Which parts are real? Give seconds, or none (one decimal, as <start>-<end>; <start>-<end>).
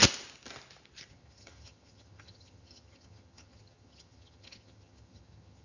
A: 0.0-1.1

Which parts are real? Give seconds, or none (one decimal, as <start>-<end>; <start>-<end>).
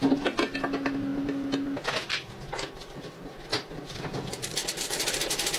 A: 0.0-3.5; 4.3-5.6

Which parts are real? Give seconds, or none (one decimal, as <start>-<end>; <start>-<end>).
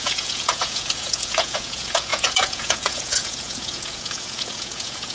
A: none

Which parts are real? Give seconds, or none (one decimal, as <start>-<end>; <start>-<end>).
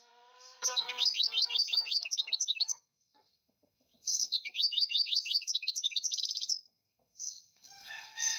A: none